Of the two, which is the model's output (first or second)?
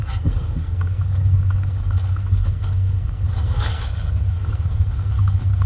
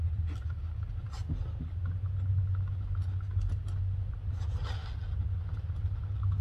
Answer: first